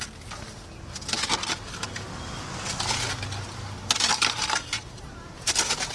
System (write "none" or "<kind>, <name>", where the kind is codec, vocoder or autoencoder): none